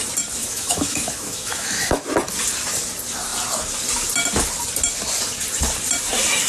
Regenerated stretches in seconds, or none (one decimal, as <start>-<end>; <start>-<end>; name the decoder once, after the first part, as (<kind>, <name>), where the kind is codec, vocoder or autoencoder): 0.4-2.0 (autoencoder, DAC-VAE)